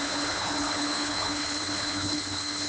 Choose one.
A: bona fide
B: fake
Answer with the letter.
B